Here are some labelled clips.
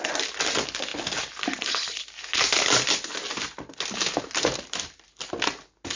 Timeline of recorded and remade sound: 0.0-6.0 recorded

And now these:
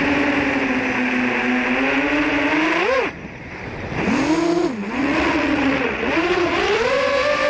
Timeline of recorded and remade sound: 0.0-5.0 recorded; 5.0-6.9 remade; 6.9-7.5 recorded

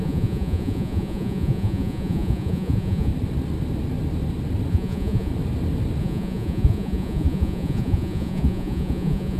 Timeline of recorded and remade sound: 0.0-3.1 remade; 3.1-4.7 recorded; 4.7-5.3 remade; 5.3-6.0 recorded; 6.0-9.4 remade

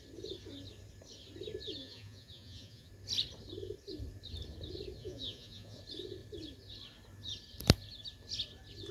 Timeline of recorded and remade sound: 0.0-1.8 recorded; 1.8-2.9 remade; 2.9-5.0 recorded; 5.0-5.8 remade; 5.8-8.9 recorded

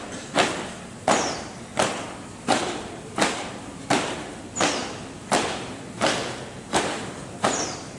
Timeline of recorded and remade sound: 0.0-6.2 recorded; 6.2-6.8 remade; 6.8-8.0 recorded

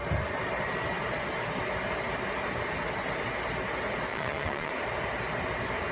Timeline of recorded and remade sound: 0.0-4.1 recorded; 4.1-4.7 remade; 4.7-5.9 recorded